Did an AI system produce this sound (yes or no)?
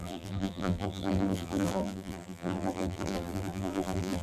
yes